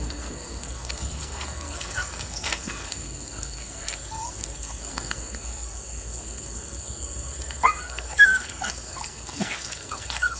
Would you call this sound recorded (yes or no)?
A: no